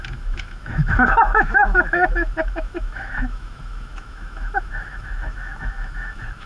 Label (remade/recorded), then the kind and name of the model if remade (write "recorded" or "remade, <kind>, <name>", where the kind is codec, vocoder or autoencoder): remade, autoencoder, DAC-VAE